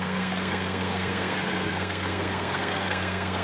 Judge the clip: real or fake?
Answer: fake